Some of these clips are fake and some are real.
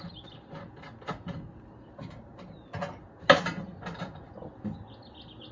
real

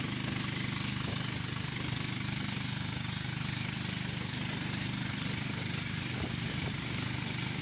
real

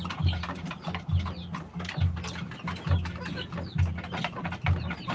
real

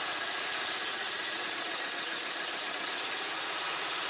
fake